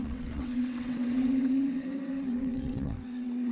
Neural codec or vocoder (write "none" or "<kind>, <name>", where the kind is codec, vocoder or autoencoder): vocoder, WaveNeXt